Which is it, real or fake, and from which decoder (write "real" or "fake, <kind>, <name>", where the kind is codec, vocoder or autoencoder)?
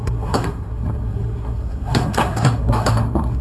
fake, codec, SNAC